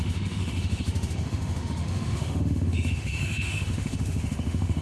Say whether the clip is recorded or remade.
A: remade